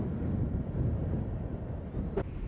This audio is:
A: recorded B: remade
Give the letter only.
A